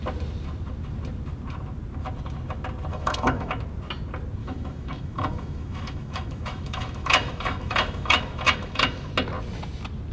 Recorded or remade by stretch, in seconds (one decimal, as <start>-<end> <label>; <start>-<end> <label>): 0.0-2.9 recorded; 2.9-3.5 remade; 3.5-4.4 recorded; 4.4-9.1 remade; 9.1-10.1 recorded